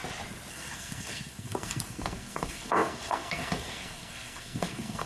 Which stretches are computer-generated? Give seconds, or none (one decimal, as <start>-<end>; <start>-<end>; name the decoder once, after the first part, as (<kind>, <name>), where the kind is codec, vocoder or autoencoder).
0.5-5.1 (codec, SNAC)